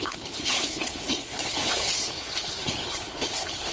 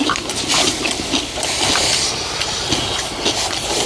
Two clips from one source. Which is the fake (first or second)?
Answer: first